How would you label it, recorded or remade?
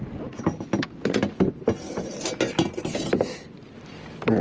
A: recorded